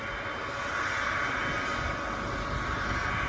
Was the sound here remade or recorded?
recorded